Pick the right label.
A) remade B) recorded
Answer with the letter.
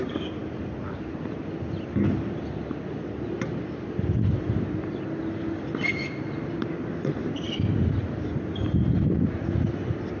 B